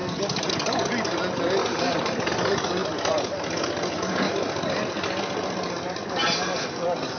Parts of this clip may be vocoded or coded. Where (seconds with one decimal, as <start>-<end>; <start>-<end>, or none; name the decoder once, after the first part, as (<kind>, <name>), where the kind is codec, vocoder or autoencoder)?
1.6-2.3 (vocoder, BigVGAN v2)